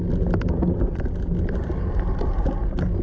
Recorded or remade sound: remade